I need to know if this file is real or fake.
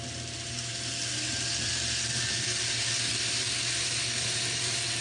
real